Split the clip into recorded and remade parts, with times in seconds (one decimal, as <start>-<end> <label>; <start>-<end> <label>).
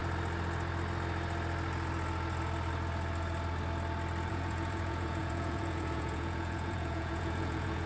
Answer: 0.0-4.3 recorded; 4.3-7.9 remade